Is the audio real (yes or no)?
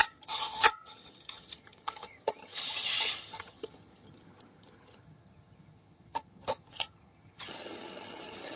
no